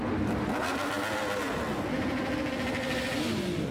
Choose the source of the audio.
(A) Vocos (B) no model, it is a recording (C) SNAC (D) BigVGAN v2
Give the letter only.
B